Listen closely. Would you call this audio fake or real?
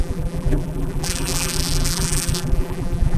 fake